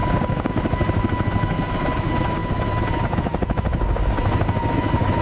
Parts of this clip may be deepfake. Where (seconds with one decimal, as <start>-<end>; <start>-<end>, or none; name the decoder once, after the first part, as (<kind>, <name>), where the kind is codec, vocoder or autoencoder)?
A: 0.0-0.5 (codec, DAC)